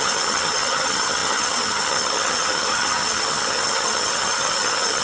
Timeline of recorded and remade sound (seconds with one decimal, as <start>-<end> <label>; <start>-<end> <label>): 0.0-5.0 remade